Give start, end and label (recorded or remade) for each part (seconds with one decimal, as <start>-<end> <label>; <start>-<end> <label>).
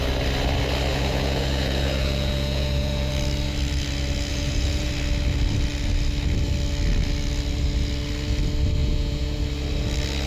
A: 0.0-0.9 recorded; 0.9-3.1 remade; 3.1-4.3 recorded; 4.3-4.9 remade; 4.9-8.8 recorded; 8.8-9.4 remade; 9.4-10.3 recorded